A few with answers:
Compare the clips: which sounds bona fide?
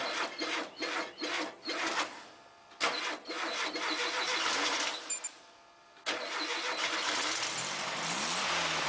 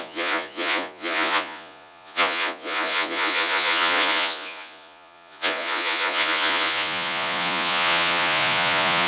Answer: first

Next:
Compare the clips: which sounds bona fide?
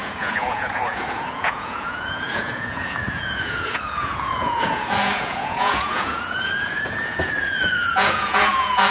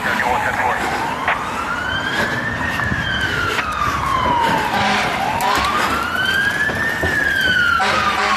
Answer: second